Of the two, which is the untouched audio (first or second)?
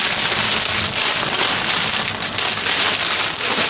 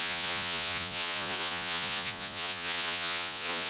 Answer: first